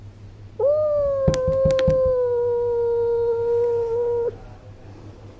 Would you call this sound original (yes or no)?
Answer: yes